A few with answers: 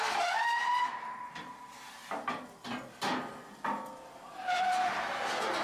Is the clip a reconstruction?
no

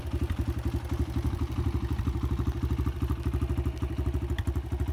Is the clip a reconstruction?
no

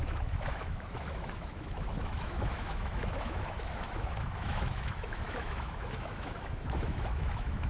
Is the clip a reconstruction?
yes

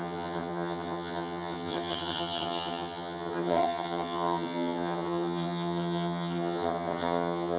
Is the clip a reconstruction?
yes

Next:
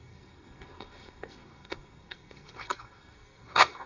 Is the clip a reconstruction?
yes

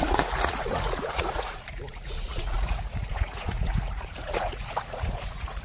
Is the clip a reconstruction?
yes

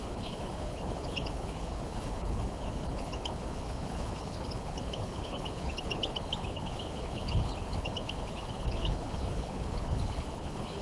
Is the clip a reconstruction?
yes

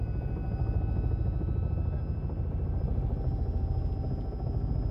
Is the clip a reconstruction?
no